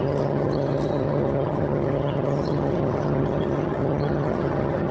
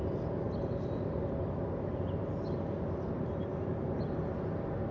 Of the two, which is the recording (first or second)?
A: second